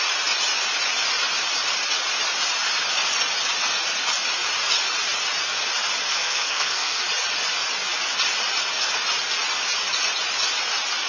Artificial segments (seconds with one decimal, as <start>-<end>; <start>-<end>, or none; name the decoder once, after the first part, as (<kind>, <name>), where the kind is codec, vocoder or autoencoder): 6.1-7.0 (codec, SNAC)